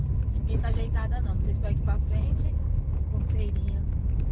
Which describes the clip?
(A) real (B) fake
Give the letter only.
A